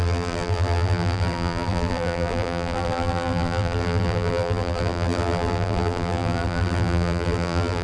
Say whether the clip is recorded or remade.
remade